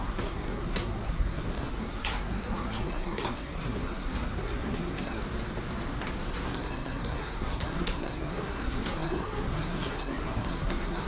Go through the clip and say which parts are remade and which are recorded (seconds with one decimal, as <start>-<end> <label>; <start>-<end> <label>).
0.0-5.2 remade; 5.2-6.3 recorded; 6.3-11.1 remade